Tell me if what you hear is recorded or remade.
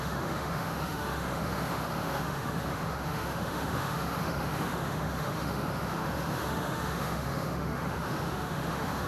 remade